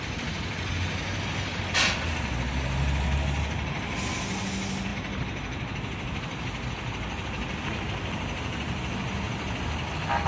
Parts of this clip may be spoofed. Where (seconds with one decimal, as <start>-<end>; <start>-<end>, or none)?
none